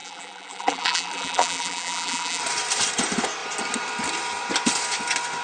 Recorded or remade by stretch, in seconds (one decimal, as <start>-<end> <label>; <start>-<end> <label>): 0.0-2.4 remade; 2.4-5.4 recorded